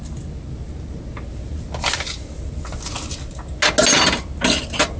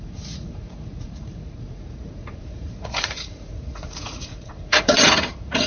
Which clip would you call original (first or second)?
first